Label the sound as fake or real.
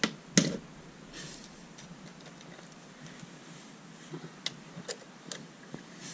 real